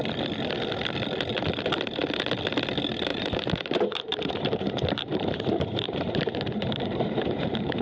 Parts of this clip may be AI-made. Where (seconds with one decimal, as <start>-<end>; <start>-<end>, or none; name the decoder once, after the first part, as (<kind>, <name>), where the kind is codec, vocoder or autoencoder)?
3.1-7.8 (vocoder, BigVGAN v2)

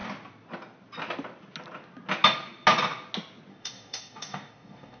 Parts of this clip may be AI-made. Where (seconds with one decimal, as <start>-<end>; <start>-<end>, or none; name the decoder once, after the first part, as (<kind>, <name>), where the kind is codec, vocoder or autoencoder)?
3.5-5.0 (codec, DAC)

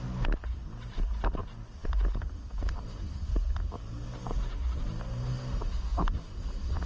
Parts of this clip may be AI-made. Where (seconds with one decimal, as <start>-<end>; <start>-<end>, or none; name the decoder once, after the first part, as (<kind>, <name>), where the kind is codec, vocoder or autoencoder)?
1.8-3.6 (vocoder, BigVGAN v2); 5.9-6.4

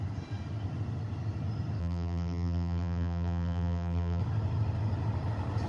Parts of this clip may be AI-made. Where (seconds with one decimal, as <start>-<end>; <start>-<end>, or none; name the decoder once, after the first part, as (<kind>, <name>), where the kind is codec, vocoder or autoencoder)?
1.8-4.2 (vocoder, BigVGAN v2)

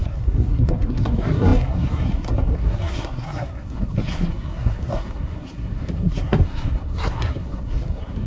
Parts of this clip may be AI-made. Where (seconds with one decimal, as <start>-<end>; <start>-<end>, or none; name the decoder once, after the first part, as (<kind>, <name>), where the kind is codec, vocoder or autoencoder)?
0.0-8.3 (codec, SNAC)

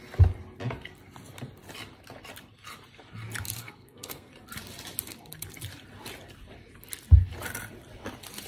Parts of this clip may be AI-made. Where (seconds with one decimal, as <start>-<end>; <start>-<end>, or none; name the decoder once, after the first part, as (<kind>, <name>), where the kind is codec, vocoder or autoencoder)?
3.6-4.3 (codec, SNAC)

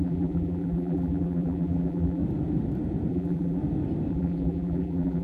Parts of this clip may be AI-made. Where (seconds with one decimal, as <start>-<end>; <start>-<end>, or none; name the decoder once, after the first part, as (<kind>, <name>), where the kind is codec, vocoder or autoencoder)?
0.0-2.2 (vocoder, BigVGAN v2); 3.1-3.6; 4.1-5.2

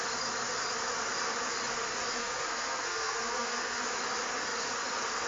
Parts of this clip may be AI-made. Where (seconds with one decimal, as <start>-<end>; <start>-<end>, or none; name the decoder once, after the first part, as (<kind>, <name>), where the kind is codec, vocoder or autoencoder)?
2.2-3.8 (codec, SNAC)